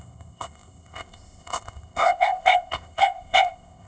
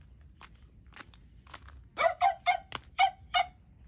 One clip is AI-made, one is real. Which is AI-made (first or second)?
first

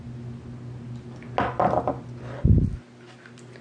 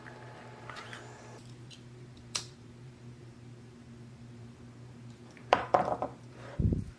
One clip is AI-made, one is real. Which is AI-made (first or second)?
second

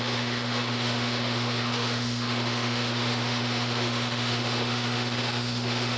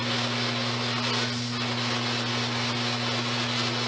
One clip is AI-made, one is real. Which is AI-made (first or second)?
first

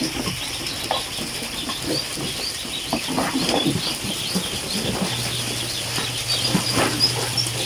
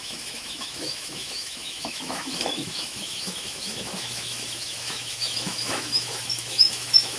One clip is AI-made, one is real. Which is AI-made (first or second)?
second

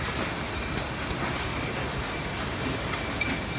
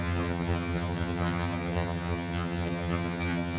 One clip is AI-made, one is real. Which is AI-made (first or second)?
second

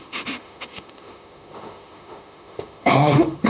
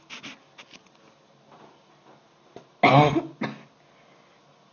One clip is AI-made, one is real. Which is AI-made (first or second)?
first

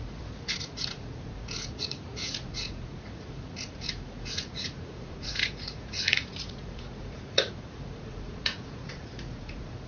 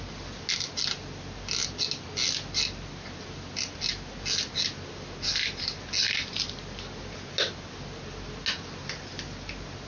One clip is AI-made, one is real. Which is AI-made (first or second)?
first